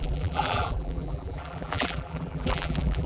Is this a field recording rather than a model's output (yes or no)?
no